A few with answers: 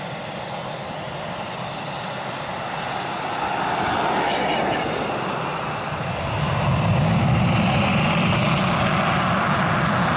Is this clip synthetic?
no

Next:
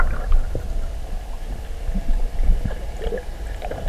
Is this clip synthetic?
no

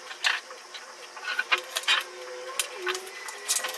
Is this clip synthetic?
no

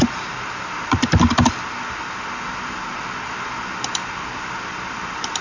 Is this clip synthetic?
no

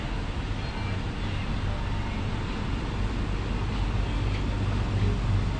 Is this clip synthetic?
no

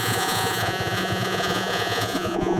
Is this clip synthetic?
yes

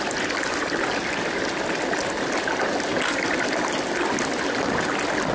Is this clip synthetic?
no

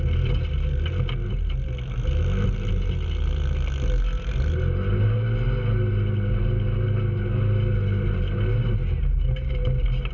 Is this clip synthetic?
no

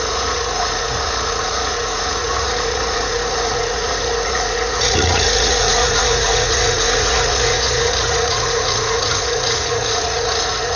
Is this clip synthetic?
yes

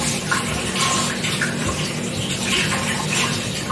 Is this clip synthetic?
no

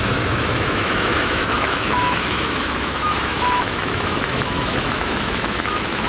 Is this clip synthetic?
yes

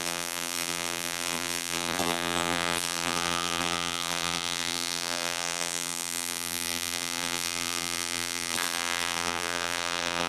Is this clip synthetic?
yes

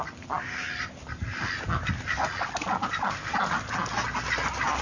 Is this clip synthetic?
no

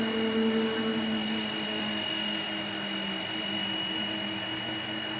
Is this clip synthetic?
no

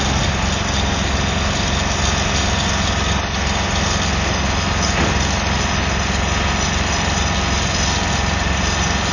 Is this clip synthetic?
no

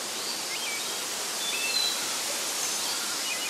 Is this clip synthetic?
no